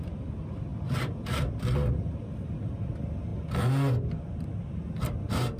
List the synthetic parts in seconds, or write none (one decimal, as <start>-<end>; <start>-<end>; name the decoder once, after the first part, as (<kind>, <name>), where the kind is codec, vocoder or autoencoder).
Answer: 0.7-2.7 (vocoder, BigVGAN v2)